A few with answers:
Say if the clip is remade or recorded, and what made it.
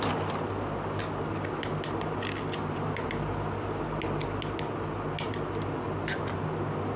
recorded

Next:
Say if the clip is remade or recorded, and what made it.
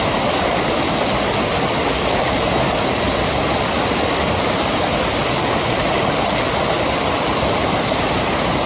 recorded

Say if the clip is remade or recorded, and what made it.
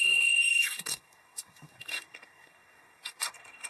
remade, codec, SNAC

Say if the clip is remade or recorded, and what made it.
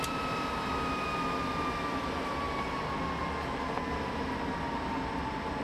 recorded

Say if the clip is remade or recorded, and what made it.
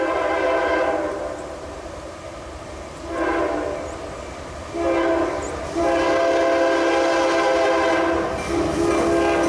recorded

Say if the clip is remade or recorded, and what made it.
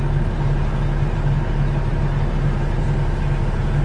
recorded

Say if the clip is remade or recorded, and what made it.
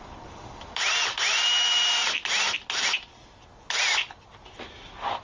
recorded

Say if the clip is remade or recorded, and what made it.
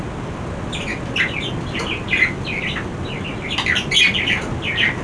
recorded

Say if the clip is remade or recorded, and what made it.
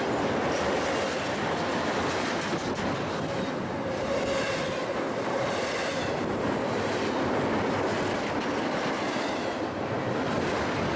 recorded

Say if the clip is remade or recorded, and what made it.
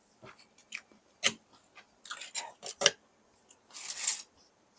recorded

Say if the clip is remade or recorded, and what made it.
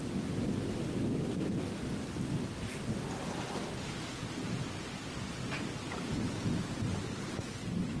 recorded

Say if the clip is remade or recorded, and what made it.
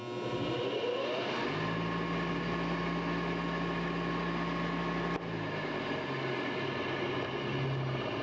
recorded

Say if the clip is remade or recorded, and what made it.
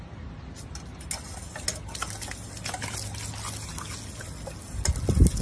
recorded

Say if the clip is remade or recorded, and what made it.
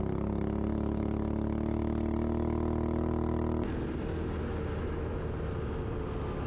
recorded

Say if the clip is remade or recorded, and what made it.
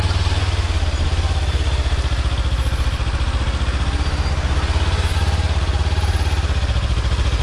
recorded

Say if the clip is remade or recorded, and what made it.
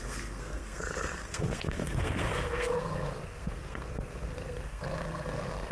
remade, codec, SNAC